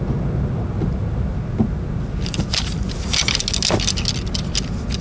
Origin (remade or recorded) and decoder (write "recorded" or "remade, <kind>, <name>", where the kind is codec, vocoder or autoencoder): recorded